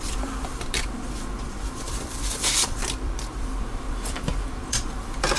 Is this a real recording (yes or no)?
no